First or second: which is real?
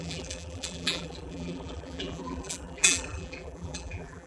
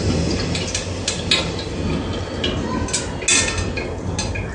second